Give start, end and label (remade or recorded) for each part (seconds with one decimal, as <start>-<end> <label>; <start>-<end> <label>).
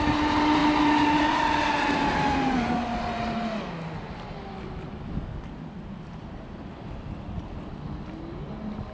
0.0-8.9 recorded